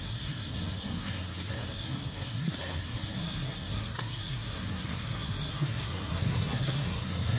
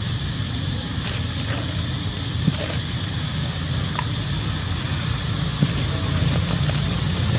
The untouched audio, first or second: second